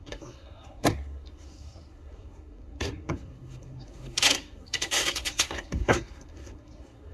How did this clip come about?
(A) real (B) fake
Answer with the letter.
B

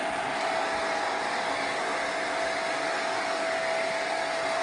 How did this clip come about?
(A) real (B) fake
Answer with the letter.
A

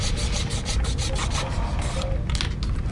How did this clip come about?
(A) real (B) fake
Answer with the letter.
A